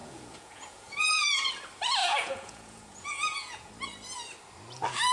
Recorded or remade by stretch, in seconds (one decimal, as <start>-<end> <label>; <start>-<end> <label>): 0.0-1.5 remade; 1.5-2.0 recorded; 2.0-3.7 remade; 3.7-5.1 recorded